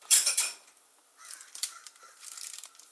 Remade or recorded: remade